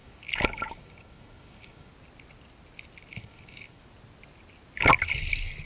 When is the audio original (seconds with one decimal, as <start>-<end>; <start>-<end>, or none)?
1.9-3.1; 3.8-5.7